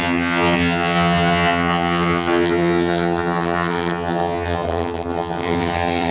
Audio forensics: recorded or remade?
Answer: remade